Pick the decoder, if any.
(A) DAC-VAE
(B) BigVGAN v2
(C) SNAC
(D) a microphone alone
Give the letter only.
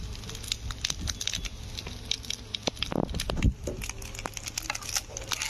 D